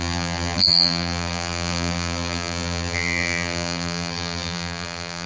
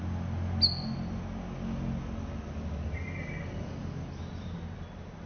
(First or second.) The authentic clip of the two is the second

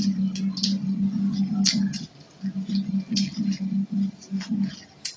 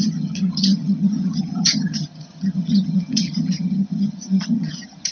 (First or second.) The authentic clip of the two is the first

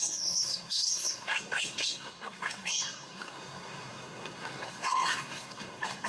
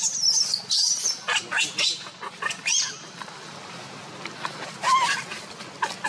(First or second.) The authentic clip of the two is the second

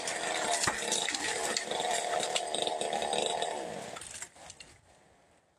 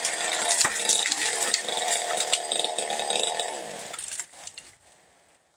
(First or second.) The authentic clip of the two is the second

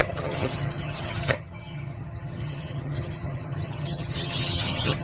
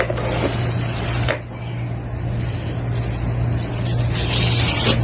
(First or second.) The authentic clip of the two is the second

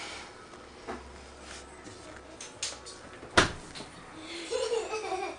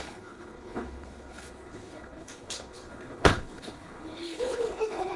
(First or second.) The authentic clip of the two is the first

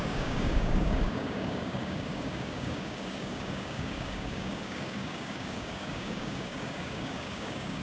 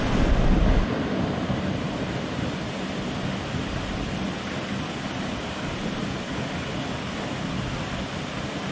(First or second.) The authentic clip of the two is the second